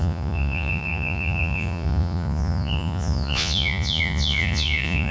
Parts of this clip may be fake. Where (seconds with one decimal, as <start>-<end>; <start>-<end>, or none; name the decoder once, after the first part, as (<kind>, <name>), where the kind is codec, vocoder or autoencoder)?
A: 0.0-5.1 (vocoder, Vocos)